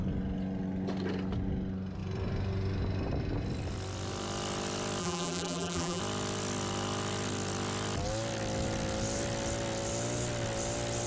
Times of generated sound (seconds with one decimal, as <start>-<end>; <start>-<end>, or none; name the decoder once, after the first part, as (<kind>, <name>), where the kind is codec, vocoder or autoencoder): 5.0-6.0 (vocoder, BigVGAN v2)